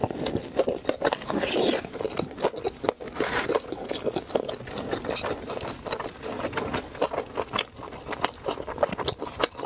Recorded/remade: recorded